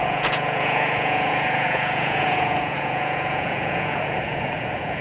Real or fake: fake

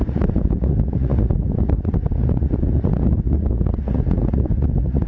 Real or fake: fake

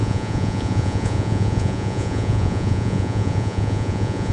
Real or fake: fake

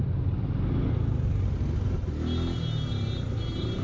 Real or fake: real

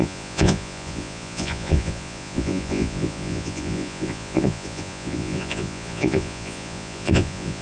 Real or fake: fake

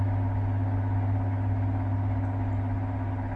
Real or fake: real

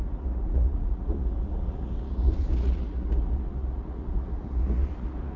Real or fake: fake